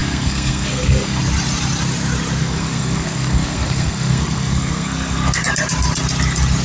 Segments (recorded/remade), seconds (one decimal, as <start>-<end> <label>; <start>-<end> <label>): 0.0-1.2 remade; 1.2-2.4 recorded; 2.4-5.4 remade; 5.4-6.6 recorded